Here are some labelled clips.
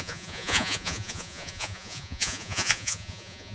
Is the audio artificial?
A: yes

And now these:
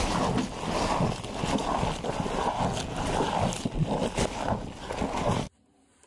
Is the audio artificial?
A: no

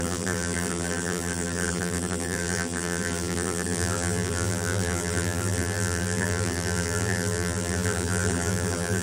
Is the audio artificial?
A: yes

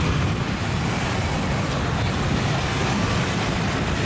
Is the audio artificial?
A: no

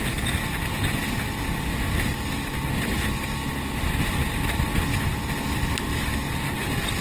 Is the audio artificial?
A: no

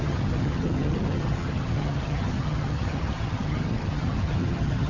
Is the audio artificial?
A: yes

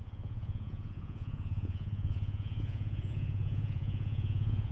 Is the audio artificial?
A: yes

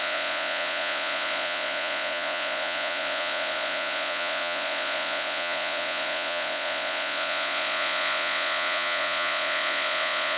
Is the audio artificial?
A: yes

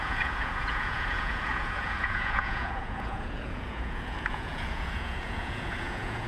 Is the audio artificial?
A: yes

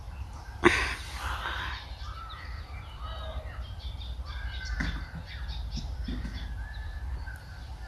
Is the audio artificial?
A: yes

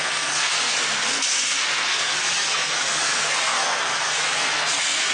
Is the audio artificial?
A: yes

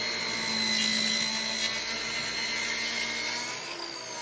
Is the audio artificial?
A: no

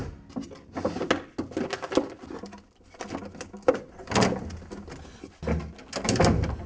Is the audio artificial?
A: no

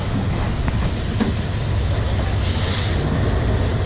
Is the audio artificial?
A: no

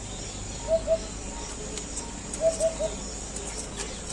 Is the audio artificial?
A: no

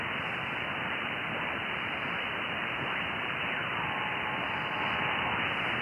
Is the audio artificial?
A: no